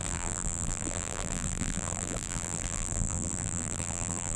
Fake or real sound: fake